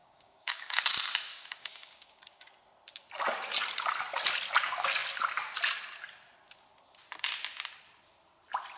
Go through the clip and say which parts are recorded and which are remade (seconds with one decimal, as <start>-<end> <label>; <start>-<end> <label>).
0.0-0.8 remade; 0.8-1.3 recorded; 1.3-2.4 remade; 2.4-8.8 recorded